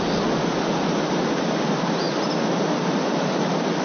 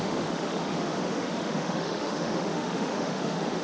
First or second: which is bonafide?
first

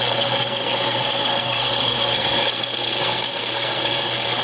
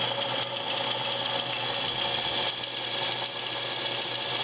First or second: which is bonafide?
second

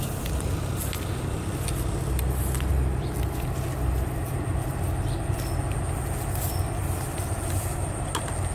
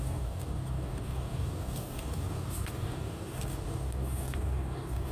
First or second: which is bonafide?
first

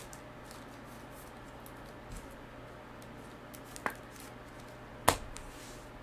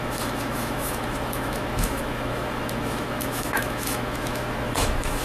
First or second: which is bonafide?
first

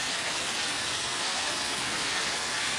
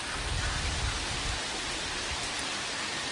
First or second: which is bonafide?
second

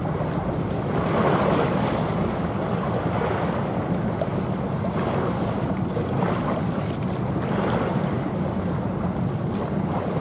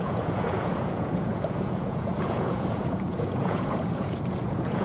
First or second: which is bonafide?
first